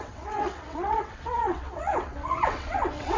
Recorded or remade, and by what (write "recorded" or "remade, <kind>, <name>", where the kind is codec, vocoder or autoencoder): remade, vocoder, WaveNeXt